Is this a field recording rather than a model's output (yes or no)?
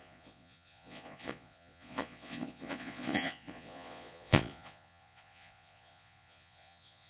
no